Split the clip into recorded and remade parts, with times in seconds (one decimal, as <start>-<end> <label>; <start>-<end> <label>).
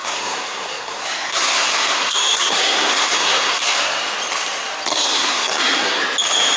0.0-4.0 remade; 4.0-4.9 recorded; 4.9-6.0 remade; 6.0-6.6 recorded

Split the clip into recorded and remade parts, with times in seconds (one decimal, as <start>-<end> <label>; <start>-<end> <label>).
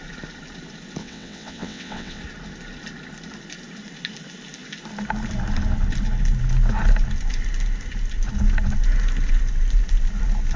0.0-1.0 recorded; 1.0-2.2 remade; 2.2-10.6 recorded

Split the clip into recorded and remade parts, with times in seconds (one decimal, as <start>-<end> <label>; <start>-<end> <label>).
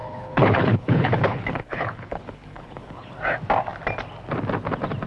0.0-3.1 remade; 3.1-5.1 recorded